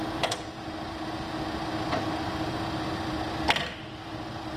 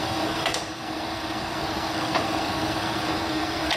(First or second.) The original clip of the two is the first